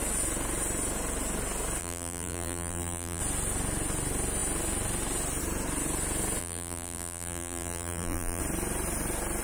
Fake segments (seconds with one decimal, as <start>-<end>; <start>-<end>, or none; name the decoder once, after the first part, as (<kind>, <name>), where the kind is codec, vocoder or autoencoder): 1.8-3.2 (vocoder, BigVGAN v2); 6.4-8.4